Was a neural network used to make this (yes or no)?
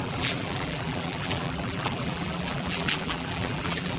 yes